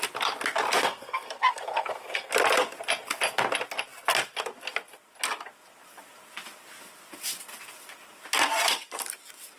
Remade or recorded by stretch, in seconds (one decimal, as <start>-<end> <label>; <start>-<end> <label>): 0.0-0.8 recorded; 0.8-2.3 remade; 2.3-9.6 recorded